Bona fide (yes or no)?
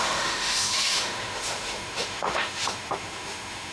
no